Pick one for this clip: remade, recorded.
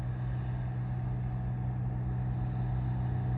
recorded